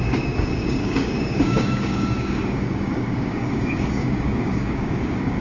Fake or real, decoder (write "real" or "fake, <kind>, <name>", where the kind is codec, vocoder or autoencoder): fake, codec, DAC